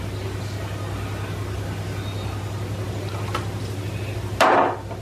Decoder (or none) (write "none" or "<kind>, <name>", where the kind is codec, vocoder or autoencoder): none